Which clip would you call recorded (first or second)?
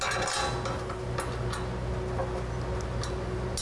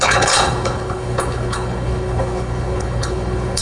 first